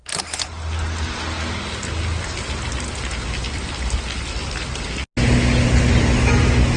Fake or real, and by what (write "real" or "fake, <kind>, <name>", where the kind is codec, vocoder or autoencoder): real